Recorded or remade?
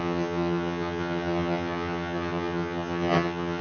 remade